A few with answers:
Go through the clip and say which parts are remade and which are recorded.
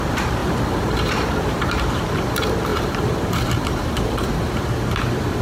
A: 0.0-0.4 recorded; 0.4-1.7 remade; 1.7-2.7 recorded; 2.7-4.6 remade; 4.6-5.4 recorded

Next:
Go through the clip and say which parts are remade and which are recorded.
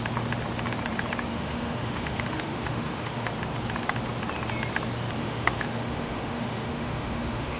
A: 0.0-1.3 recorded; 1.3-3.3 remade; 3.3-5.2 recorded; 5.2-7.6 remade